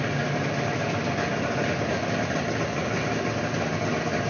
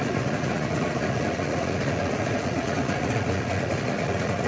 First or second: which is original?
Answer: first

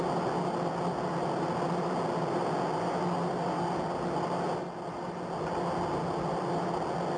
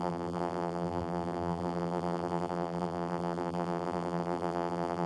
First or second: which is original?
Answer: first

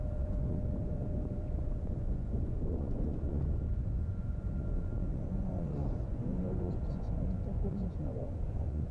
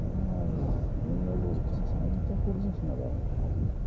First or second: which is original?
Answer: second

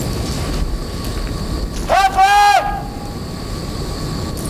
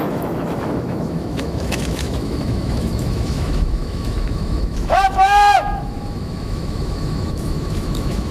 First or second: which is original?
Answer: first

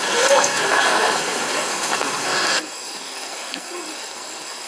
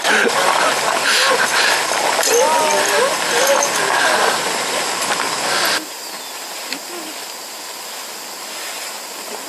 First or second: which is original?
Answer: second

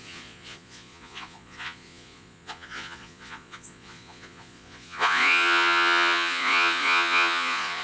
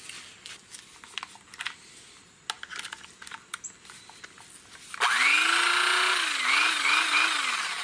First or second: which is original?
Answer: second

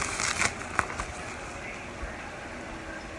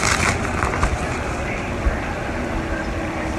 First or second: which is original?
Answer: first